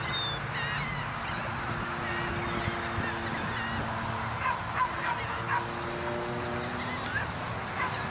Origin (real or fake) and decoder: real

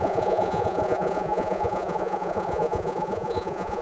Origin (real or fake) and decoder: fake, vocoder, Vocos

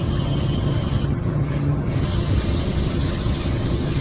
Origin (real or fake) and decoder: fake, vocoder, HiFi-GAN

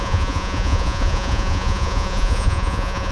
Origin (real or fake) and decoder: fake, vocoder, Vocos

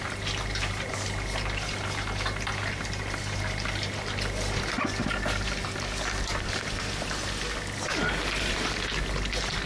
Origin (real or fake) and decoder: real